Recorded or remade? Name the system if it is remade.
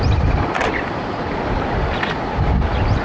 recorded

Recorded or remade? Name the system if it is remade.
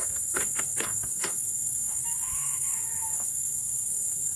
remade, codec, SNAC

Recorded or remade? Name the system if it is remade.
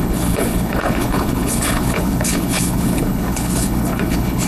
remade, codec, HILCodec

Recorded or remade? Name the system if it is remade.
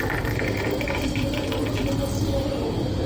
recorded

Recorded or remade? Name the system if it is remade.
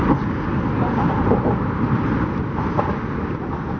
recorded